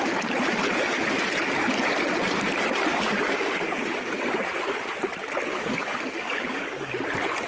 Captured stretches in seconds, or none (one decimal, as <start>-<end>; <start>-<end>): 0.0-2.9; 3.7-5.5; 6.9-7.5